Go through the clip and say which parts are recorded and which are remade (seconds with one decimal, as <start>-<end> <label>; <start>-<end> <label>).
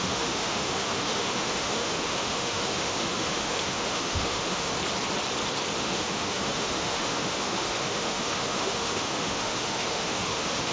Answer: 0.0-4.7 remade; 4.7-5.8 recorded; 5.8-10.7 remade